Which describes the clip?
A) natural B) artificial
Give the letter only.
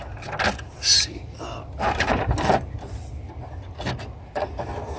A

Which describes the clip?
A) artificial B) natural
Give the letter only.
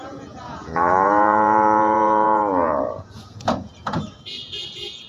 A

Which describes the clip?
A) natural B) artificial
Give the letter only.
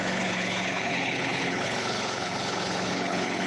B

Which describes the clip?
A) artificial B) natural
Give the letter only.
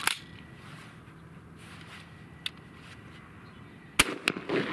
B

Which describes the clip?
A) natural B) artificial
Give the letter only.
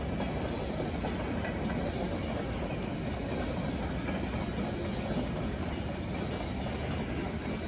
A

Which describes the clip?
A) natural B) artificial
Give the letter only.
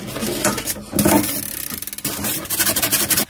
A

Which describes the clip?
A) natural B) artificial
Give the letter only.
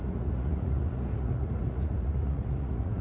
B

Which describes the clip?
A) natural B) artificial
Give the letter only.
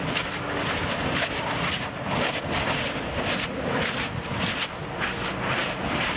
A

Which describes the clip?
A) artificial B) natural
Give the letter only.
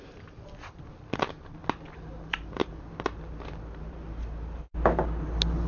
B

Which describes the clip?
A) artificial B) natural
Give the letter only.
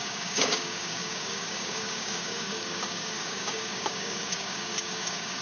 A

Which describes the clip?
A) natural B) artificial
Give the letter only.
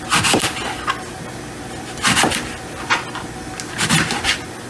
A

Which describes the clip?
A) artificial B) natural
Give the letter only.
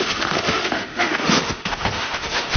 A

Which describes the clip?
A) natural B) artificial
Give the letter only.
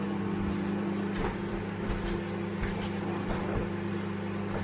B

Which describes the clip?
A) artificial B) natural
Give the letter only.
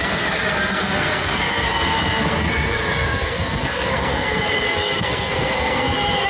A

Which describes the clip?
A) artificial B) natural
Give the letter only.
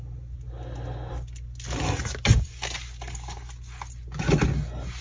B